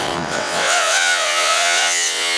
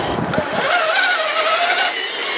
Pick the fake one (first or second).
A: first